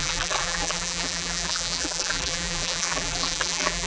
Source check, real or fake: fake